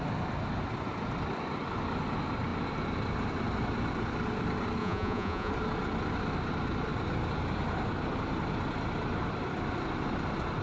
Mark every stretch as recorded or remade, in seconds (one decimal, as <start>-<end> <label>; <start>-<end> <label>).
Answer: 0.0-4.8 recorded; 4.8-5.5 remade; 5.5-10.6 recorded